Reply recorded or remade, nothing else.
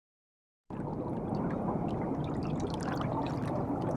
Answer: recorded